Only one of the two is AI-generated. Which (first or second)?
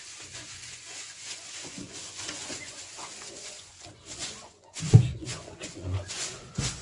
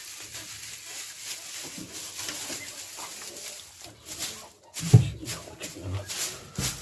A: first